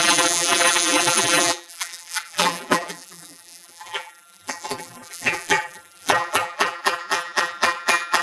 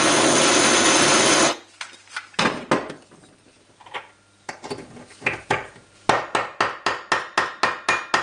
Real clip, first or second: second